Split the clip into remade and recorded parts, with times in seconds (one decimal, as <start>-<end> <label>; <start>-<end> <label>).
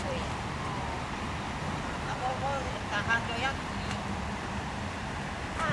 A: 0.0-5.7 recorded